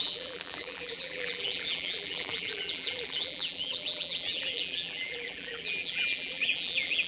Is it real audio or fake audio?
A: fake